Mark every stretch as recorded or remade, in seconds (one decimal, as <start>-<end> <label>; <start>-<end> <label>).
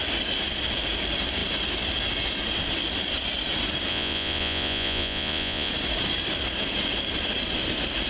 0.0-3.9 recorded; 3.9-5.7 remade; 5.7-8.1 recorded